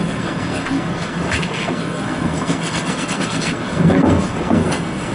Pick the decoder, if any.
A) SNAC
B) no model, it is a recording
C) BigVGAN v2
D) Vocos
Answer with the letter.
A